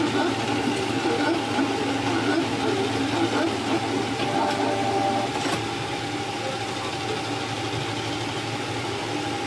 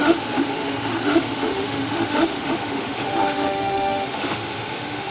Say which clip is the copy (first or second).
second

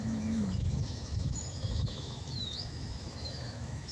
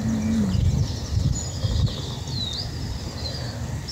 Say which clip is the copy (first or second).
first